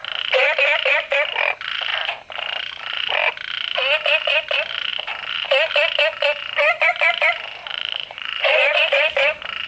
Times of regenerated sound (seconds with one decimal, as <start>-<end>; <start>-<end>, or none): 7.7-9.0